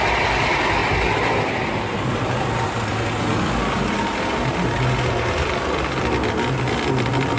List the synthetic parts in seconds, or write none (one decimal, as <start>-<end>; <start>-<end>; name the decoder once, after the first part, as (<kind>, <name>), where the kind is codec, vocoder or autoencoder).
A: none